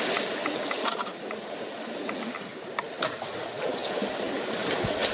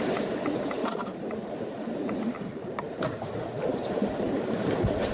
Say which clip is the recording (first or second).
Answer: first